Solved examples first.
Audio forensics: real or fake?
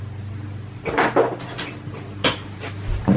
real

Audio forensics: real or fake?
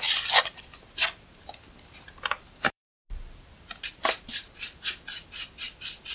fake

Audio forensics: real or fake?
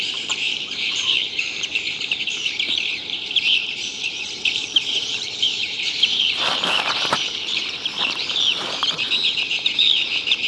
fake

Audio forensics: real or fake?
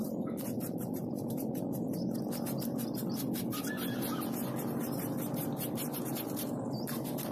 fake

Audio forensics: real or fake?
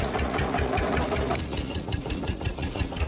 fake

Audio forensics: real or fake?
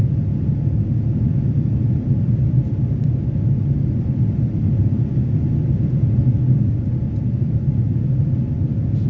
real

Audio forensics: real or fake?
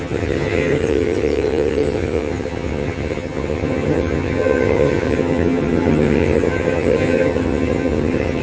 fake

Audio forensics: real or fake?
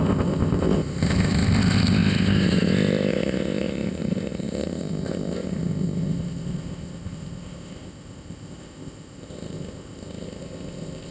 fake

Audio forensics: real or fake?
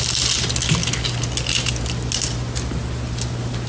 real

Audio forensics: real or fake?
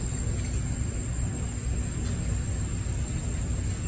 real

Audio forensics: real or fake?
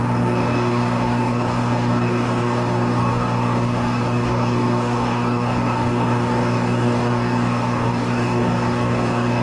fake